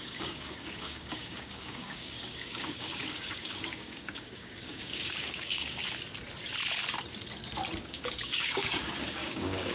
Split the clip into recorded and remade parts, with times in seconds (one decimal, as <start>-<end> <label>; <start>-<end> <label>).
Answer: 0.0-5.8 remade; 5.8-7.8 recorded; 7.8-9.7 remade